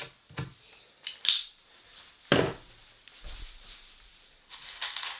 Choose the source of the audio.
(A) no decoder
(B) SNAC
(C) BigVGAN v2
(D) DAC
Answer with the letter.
A